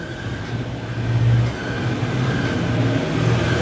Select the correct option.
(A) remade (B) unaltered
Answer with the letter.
B